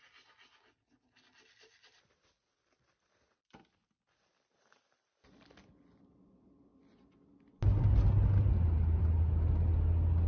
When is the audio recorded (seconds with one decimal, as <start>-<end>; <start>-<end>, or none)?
0.0-10.3